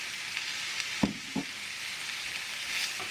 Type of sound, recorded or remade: recorded